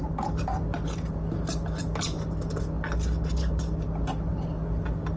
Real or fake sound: real